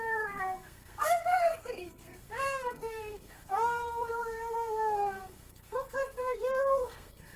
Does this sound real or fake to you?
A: fake